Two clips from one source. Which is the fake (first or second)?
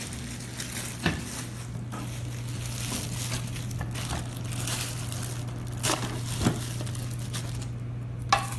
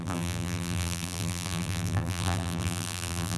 second